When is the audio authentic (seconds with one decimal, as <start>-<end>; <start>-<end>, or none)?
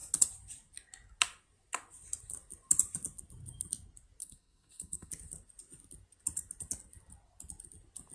0.0-4.2; 5.1-8.1